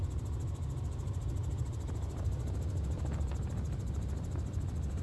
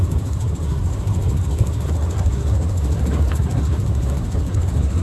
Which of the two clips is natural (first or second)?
first